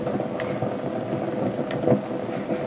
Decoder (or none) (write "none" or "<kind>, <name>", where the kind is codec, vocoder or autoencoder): none